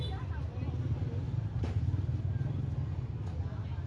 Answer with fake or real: real